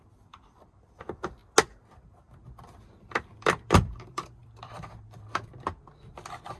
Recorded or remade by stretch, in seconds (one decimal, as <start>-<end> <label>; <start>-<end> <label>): 0.0-1.4 remade; 1.4-2.8 recorded; 2.8-6.6 remade